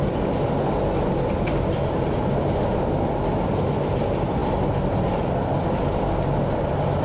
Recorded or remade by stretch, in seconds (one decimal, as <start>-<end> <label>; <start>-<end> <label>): 0.0-7.0 recorded